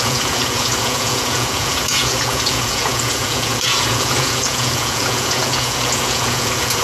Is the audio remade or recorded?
remade